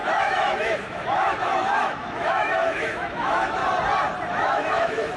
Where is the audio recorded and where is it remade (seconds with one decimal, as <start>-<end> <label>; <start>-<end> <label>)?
0.0-3.6 remade; 3.6-4.3 recorded; 4.3-5.2 remade